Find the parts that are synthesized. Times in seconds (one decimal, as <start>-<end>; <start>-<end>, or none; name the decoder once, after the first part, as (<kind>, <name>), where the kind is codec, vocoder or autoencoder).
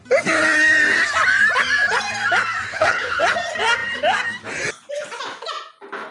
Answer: 2.7-3.2 (codec, HILCodec)